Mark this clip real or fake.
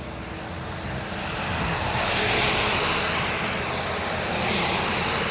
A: real